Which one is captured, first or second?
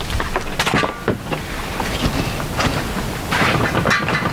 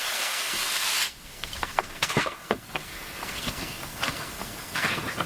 first